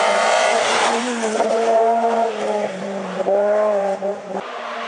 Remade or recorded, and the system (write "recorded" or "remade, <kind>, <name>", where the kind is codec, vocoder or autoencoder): remade, vocoder, BigVGAN v2